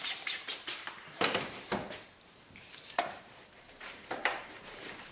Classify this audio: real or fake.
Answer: fake